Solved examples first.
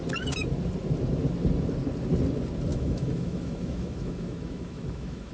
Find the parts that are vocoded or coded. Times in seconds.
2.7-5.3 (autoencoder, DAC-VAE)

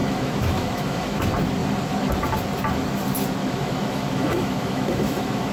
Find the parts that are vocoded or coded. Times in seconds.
0.0-1.2 (autoencoder, DAC-VAE); 3.4-5.5

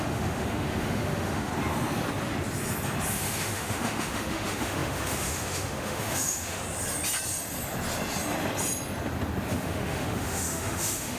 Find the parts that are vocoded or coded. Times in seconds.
0.0-1.5 (autoencoder, DAC-VAE); 3.1-6.6; 9.5-11.2

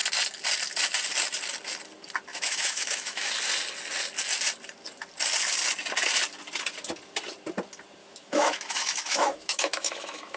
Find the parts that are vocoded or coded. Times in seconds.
2.3-3.3 (autoencoder, DAC-VAE); 8.0-10.4

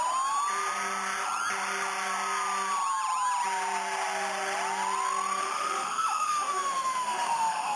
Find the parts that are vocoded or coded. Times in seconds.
5.4-7.8 (autoencoder, DAC-VAE)

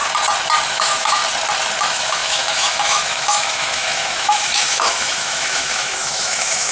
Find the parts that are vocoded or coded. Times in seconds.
0.7-1.2 (autoencoder, DAC-VAE); 1.8-6.7

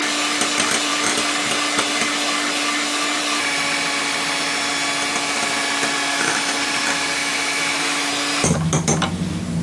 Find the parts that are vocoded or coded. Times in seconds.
6.1-6.6 (autoencoder, DAC-VAE); 7.2-8.1